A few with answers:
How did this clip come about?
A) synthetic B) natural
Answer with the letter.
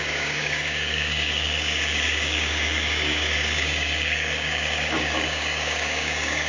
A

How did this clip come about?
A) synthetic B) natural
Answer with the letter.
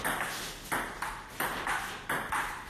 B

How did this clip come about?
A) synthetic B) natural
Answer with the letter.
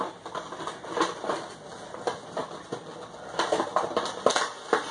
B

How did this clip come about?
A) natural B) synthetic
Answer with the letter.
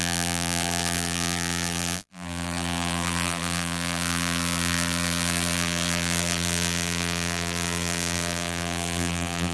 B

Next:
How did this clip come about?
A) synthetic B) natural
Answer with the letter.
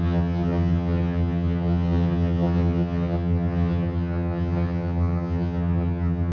A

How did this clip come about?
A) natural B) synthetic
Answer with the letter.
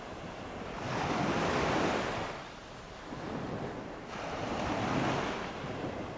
A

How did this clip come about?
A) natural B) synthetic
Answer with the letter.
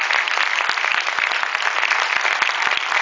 A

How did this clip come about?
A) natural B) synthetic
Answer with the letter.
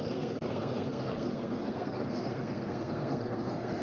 B